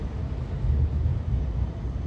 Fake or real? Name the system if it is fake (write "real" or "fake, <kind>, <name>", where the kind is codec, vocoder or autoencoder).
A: real